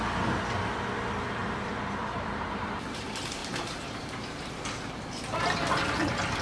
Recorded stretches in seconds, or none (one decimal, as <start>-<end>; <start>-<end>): 0.0-1.4; 2.8-3.4; 5.0-6.4